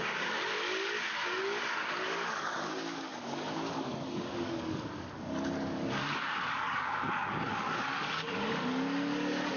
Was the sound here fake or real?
fake